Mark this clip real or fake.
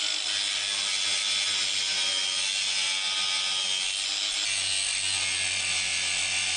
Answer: real